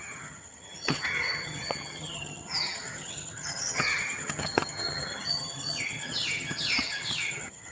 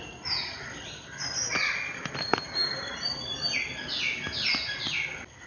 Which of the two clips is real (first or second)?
second